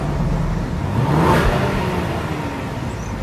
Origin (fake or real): real